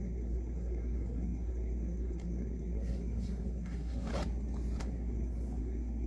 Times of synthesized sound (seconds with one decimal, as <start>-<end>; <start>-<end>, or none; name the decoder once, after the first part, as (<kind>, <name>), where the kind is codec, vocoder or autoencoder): 0.0-4.1 (codec, SNAC); 4.8-6.1